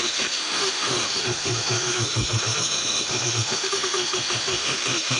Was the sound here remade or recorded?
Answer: remade